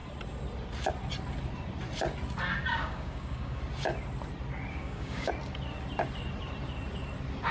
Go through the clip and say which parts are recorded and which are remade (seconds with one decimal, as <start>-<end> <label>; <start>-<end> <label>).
0.0-2.7 recorded; 2.7-3.6 remade; 3.6-4.7 recorded; 4.7-5.3 remade; 5.3-7.5 recorded